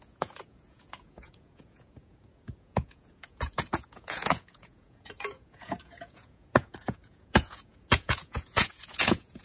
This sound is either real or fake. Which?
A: fake